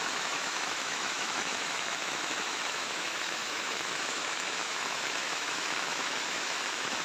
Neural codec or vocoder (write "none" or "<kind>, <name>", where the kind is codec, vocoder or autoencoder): autoencoder, DAC-VAE